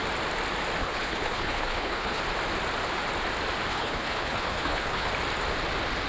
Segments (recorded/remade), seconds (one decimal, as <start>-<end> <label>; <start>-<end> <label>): 0.0-0.8 recorded; 0.8-2.2 remade; 2.2-3.7 recorded; 3.7-5.1 remade; 5.1-6.1 recorded